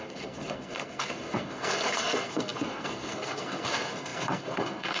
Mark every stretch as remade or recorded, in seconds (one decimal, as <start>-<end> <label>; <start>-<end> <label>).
0.0-5.0 remade